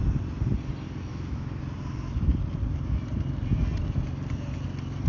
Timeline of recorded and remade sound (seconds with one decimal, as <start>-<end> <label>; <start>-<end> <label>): 0.0-1.1 recorded; 1.1-1.6 remade; 1.6-5.1 recorded